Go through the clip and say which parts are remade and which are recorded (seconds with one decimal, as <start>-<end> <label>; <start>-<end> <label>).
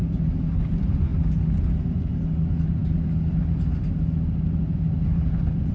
0.0-5.7 recorded